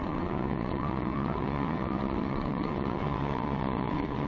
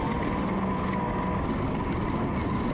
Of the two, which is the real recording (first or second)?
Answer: second